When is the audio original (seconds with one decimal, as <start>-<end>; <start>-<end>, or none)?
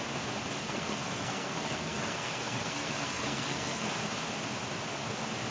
0.0-0.6; 3.9-5.5